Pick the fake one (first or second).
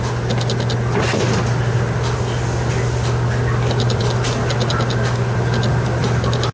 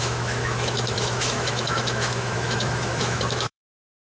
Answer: second